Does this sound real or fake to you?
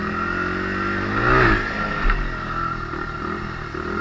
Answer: real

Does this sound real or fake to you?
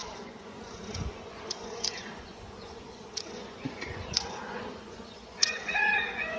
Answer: fake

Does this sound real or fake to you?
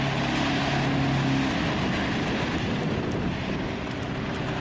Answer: real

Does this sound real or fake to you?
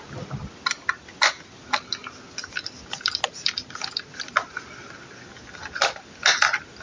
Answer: real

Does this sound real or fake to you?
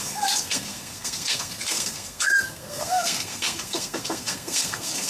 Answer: fake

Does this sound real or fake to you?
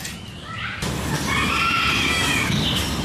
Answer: real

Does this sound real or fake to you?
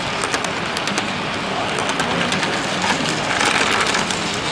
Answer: real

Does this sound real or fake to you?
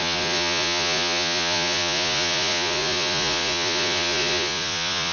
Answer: fake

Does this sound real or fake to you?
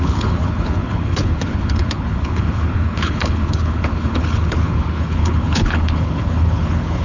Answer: fake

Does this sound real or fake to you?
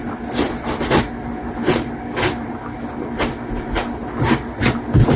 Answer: real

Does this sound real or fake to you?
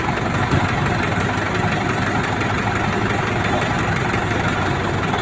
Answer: real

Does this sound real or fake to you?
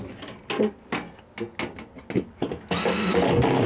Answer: real